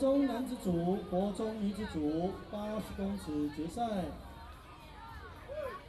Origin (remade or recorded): recorded